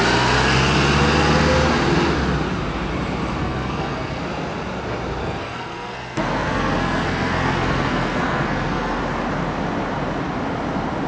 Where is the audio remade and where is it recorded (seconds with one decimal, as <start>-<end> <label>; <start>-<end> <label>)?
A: 0.0-3.4 recorded; 3.4-4.2 remade; 4.2-5.2 recorded; 5.2-9.0 remade; 9.0-11.1 recorded